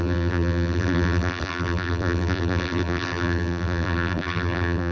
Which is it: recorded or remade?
remade